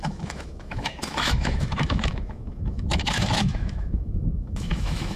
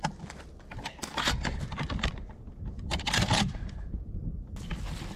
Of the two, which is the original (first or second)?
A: second